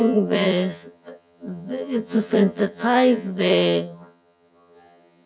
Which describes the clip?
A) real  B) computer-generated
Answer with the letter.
B